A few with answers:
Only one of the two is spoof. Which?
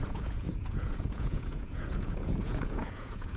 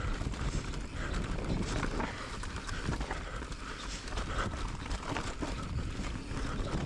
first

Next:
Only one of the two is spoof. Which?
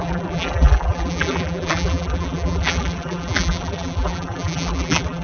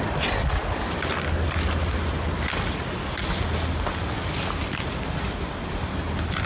first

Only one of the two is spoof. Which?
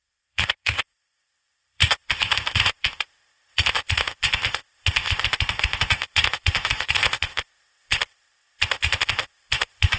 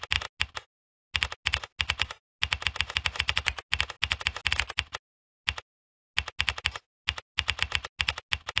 first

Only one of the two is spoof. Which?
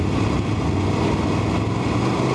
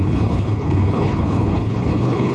second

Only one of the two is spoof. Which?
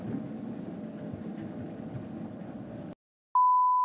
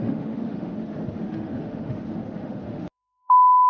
second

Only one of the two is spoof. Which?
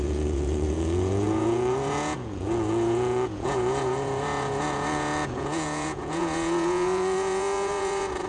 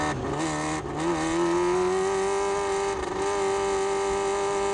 first